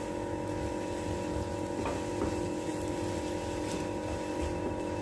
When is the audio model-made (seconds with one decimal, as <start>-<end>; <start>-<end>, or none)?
none